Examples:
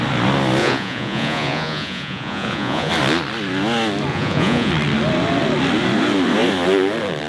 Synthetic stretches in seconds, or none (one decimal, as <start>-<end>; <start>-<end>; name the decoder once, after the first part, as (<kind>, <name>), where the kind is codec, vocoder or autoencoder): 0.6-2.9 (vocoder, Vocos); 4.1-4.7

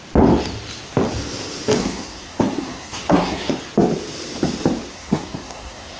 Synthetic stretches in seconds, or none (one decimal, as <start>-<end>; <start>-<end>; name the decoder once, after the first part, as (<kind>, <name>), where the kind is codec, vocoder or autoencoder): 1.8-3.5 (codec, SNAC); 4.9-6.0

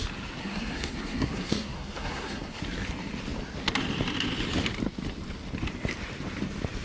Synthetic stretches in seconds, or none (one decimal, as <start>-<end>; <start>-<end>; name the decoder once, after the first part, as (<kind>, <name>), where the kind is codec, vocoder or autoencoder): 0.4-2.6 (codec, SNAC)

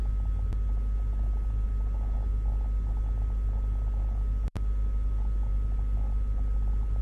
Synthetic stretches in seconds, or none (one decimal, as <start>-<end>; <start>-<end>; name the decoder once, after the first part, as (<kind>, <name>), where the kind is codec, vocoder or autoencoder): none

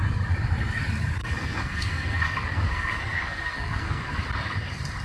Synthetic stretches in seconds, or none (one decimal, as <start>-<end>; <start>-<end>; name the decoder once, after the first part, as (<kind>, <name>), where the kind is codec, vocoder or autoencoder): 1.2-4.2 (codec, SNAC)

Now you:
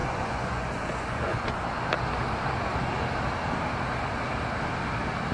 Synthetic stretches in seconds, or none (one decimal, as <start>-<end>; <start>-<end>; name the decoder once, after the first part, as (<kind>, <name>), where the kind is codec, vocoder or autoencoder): 0.0-1.5 (vocoder, Vocos)

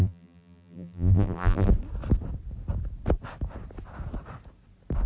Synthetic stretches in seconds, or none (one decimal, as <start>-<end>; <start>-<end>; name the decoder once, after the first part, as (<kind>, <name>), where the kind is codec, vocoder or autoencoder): 0.0-1.7 (vocoder, BigVGAN v2)